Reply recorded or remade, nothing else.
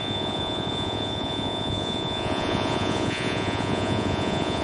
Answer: remade